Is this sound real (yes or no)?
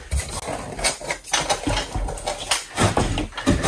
yes